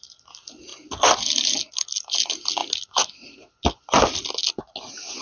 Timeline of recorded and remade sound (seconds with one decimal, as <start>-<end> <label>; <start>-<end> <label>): 0.0-5.2 recorded